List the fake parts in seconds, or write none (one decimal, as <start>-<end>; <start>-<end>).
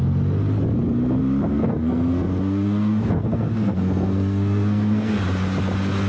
1.5-5.2